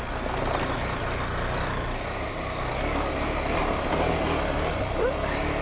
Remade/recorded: recorded